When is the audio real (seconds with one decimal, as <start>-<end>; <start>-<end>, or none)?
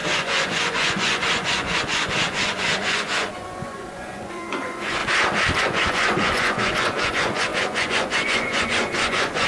5.0-5.6